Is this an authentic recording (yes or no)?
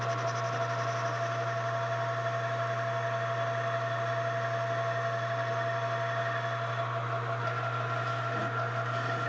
yes